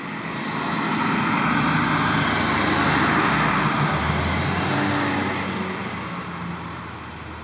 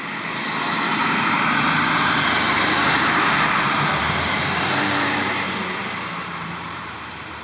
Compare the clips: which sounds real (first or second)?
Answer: first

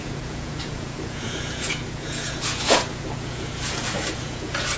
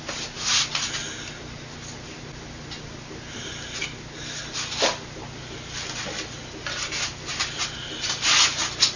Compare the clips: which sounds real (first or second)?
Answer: second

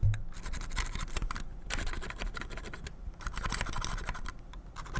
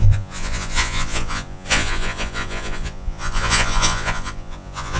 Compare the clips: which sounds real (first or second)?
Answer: first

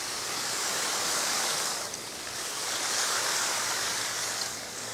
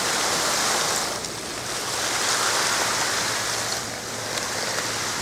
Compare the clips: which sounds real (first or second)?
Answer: second